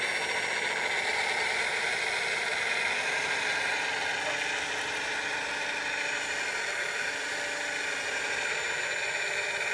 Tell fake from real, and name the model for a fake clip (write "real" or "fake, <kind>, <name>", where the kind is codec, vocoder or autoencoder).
real